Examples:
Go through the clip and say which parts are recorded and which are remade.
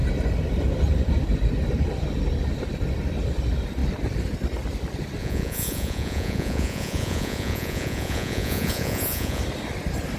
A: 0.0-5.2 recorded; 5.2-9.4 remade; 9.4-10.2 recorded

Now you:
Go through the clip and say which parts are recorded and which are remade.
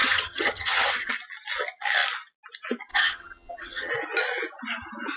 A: 0.0-1.1 remade; 1.1-2.9 recorded; 2.9-3.9 remade; 3.9-5.2 recorded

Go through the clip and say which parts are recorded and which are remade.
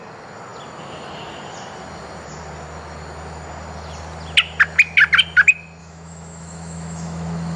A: 0.0-5.8 recorded; 5.8-7.6 remade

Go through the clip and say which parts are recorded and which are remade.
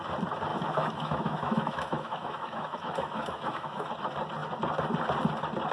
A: 0.0-0.5 recorded; 0.5-3.9 remade; 3.9-5.7 recorded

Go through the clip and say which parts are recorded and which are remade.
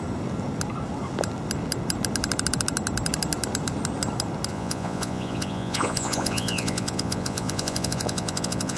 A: 0.0-4.5 recorded; 4.5-8.8 remade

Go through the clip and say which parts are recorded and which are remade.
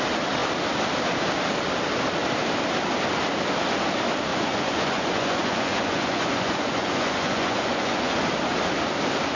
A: 0.0-4.3 recorded; 4.3-8.2 remade; 8.2-9.4 recorded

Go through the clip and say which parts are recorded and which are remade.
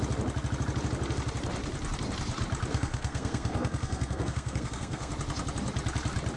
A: 0.0-2.7 recorded; 2.7-5.1 remade; 5.1-6.4 recorded